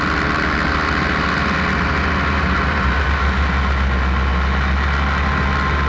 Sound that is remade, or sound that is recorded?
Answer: recorded